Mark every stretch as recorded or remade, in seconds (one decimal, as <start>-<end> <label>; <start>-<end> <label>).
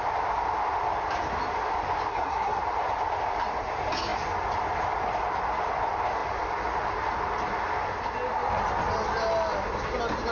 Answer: 0.0-2.1 recorded; 2.1-2.6 remade; 2.6-10.3 recorded